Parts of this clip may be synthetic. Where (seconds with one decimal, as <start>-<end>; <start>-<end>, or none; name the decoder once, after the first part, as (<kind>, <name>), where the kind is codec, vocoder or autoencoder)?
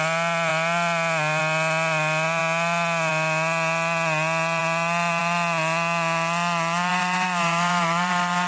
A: 6.9-8.5 (vocoder, BigVGAN v2)